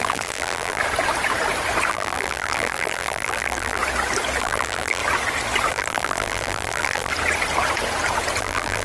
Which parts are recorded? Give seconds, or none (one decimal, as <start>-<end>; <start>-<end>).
0.8-1.9; 3.8-4.4; 5.0-5.7; 7.1-8.4